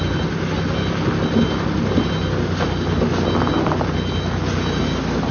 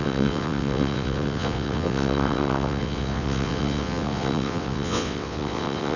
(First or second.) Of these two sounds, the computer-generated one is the second